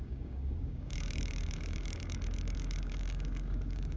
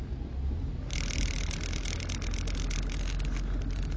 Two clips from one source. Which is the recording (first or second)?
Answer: second